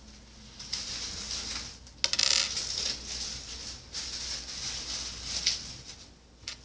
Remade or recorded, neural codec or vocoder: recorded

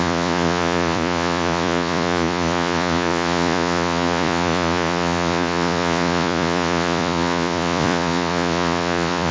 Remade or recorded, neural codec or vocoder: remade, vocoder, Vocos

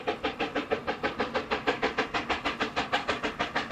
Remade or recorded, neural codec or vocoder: recorded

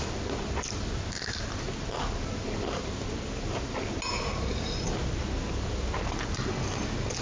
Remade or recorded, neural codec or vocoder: recorded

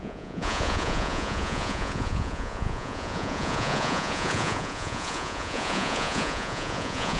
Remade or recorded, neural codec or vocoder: remade, vocoder, Vocos